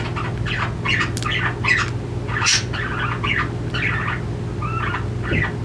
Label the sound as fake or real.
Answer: real